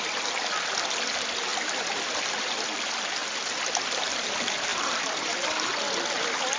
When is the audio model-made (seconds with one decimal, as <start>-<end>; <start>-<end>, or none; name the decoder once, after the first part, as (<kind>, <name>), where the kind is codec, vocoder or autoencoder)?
none